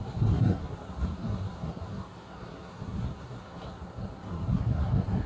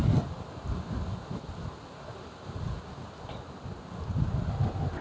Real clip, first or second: second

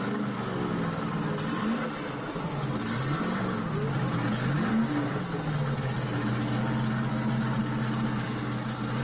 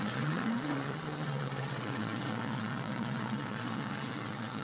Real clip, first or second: first